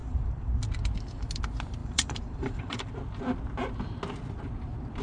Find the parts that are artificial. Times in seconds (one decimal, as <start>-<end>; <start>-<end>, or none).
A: 0.0-0.6; 1.8-2.8